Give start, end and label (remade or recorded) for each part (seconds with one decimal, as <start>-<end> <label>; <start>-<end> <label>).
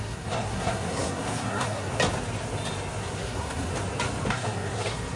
0.0-1.9 remade; 1.9-3.0 recorded; 3.0-3.7 remade; 3.7-4.3 recorded; 4.3-5.2 remade